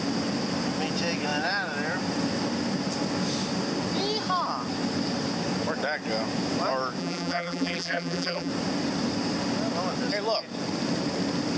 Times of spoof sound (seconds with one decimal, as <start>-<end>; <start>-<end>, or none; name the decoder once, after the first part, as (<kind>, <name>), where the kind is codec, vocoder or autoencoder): 7.0-8.5 (vocoder, BigVGAN v2)